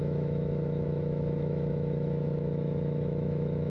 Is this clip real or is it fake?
fake